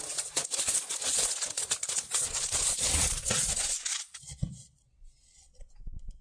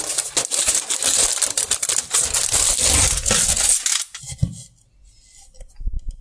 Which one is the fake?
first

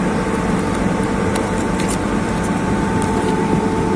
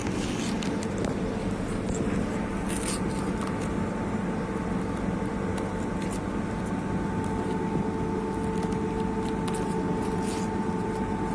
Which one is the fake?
first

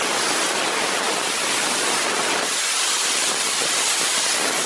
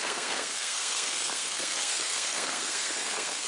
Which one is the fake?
second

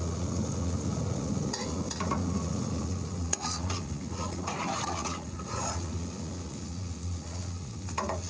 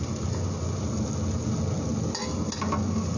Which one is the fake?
first